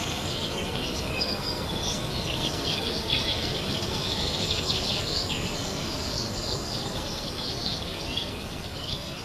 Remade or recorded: remade